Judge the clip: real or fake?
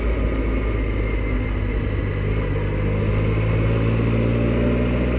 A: real